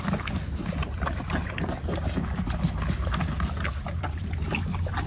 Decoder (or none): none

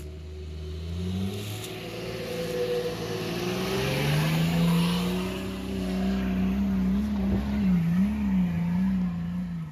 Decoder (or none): none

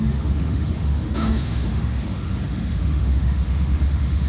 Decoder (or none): autoencoder, DAC-VAE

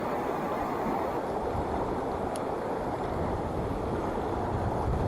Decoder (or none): none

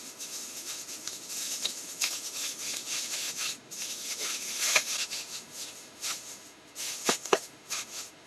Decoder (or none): autoencoder, DAC-VAE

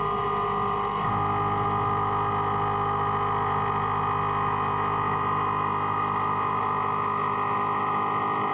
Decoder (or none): none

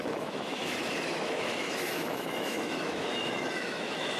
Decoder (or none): autoencoder, DAC-VAE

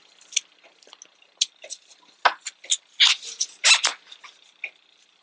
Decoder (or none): none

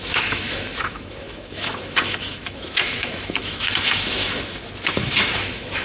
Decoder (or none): autoencoder, DAC-VAE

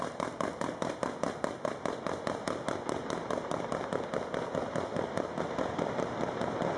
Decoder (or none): none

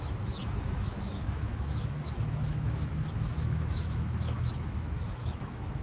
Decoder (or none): autoencoder, DAC-VAE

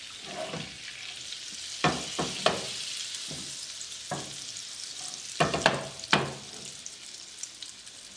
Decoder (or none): none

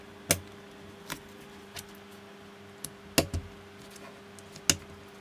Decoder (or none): none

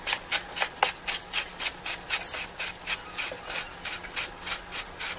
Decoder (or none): none